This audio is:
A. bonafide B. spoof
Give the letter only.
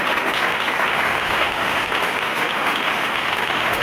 B